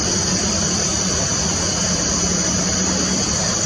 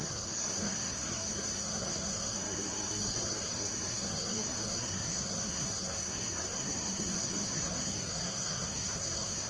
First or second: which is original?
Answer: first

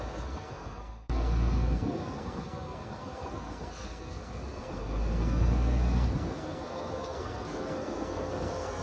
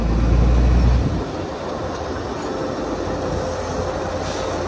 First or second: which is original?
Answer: second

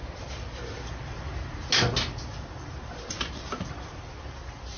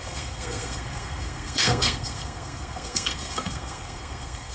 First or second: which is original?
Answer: first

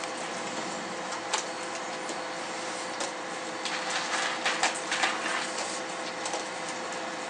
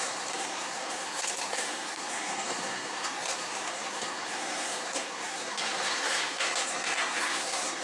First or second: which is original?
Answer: first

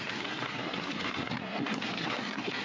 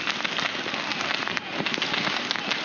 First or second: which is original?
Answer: second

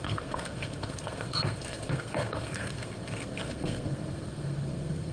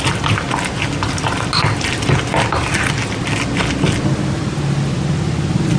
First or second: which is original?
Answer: second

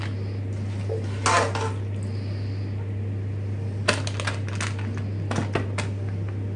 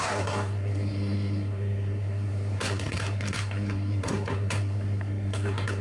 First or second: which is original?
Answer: first